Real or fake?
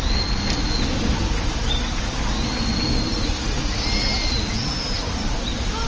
real